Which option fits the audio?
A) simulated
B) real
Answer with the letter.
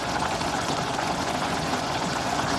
A